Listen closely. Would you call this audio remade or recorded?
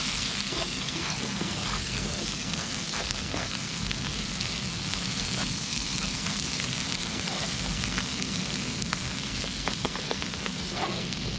remade